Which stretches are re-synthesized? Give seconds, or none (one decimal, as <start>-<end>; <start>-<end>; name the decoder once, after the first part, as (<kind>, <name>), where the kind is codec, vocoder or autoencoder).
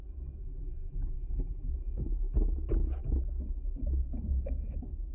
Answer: 0.4-1.7 (vocoder, BigVGAN v2)